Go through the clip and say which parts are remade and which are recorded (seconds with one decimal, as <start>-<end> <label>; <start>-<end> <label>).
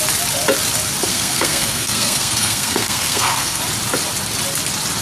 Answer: 0.0-1.1 recorded; 1.1-3.6 remade; 3.6-5.0 recorded